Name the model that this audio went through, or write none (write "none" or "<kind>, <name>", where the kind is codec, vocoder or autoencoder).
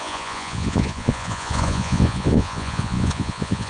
vocoder, Vocos